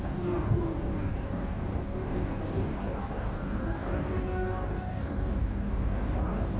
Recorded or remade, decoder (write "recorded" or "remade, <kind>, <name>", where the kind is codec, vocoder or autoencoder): remade, codec, DAC